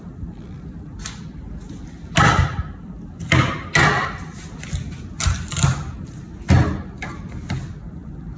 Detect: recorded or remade recorded